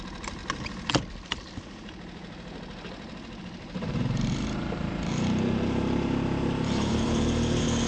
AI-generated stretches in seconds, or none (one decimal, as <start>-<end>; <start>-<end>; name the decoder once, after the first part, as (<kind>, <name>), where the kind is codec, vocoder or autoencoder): 0.0-0.4 (vocoder, BigVGAN v2); 3.4-7.9